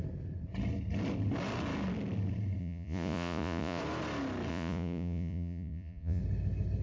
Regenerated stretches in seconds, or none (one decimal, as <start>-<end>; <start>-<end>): 2.6-3.8; 4.5-6.2